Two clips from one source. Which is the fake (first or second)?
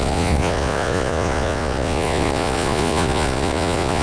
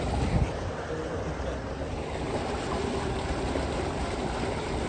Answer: first